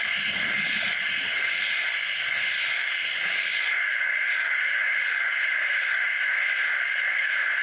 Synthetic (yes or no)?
no